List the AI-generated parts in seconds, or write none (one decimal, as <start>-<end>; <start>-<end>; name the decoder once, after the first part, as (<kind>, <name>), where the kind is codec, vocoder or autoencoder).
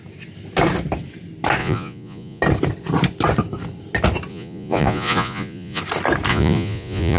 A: 1.6-2.4 (vocoder, Vocos); 4.3-5.8; 6.3-7.2